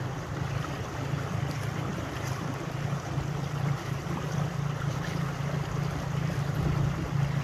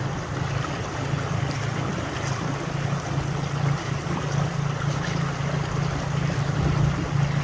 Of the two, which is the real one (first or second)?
second